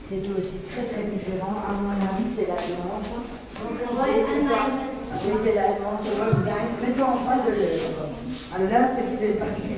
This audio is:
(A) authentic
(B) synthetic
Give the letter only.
B